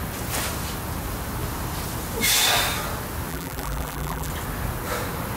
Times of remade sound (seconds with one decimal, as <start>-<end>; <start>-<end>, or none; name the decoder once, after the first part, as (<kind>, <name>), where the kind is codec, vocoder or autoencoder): 3.3-4.3 (vocoder, BigVGAN v2)